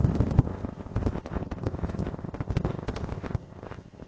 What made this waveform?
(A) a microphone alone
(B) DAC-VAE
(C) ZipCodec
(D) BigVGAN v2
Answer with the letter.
C